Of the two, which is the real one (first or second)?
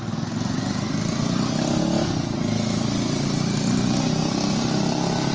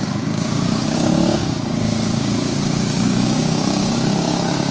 first